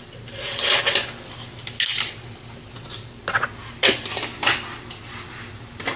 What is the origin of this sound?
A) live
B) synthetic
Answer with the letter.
A